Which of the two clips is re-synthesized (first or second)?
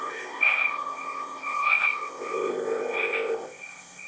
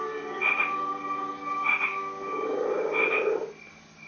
first